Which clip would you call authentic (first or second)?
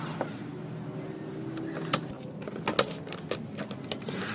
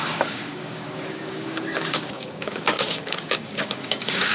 first